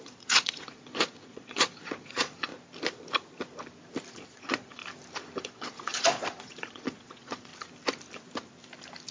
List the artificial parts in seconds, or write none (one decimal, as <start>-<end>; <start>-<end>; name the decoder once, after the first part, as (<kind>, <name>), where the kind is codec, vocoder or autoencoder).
0.0-2.5 (vocoder, Vocos); 4.1-4.8; 5.4-7.5